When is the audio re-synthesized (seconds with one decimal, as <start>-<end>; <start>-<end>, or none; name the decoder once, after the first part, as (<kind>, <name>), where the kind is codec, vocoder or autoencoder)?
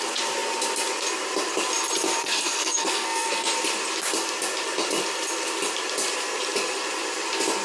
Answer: 2.2-3.5 (codec, SNAC)